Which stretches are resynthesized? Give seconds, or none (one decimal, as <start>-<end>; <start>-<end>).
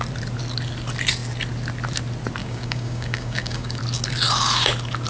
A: 2.4-3.8